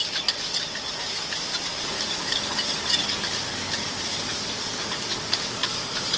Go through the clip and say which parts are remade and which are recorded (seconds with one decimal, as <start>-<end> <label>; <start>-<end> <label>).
0.0-3.0 recorded; 3.0-3.7 remade; 3.7-4.3 recorded; 4.3-5.8 remade; 5.8-6.2 recorded